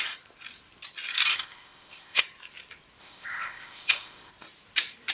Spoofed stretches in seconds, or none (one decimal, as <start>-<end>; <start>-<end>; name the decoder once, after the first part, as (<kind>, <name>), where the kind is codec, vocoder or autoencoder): 1.3-2.2 (codec, ZipCodec); 3.0-4.3